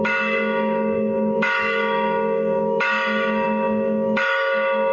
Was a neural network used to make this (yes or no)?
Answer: yes